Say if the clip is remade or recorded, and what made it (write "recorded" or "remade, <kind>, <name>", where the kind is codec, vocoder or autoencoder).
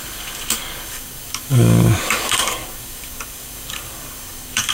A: remade, codec, DAC